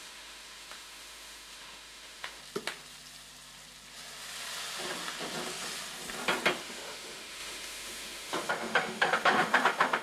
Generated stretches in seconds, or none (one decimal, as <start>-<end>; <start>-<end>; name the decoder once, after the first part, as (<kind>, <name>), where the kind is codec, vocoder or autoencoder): 0.0-2.4 (autoencoder, DAC-VAE); 6.6-10.0